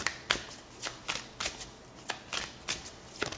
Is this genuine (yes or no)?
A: yes